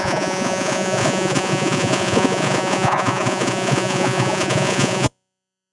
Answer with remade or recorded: remade